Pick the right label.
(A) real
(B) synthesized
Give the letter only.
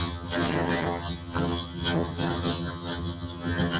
B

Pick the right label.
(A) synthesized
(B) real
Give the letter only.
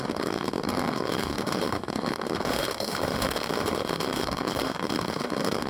A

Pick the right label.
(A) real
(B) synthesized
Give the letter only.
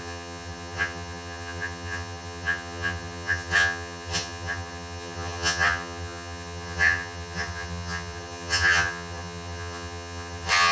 B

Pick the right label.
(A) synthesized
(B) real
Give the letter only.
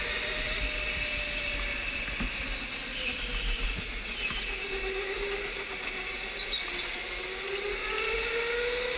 B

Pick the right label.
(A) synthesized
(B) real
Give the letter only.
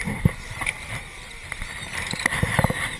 A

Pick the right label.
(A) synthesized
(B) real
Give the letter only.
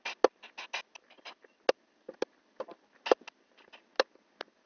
B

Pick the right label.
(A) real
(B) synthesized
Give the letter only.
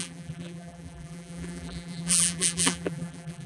B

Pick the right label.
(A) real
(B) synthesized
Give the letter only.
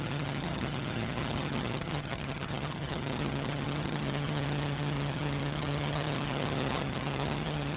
B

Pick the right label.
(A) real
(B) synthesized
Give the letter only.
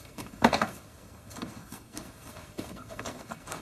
B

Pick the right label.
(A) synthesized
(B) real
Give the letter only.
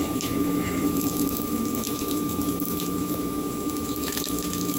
A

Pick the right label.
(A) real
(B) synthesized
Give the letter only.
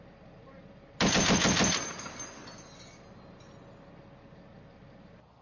A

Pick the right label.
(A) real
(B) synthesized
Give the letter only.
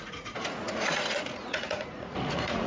B